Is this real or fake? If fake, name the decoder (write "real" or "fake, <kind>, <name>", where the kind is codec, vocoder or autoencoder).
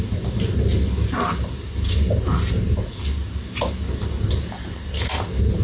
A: real